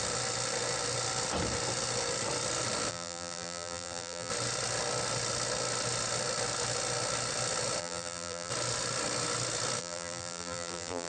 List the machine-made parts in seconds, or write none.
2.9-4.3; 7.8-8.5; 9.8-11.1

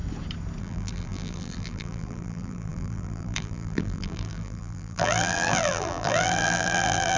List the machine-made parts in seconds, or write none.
0.6-7.2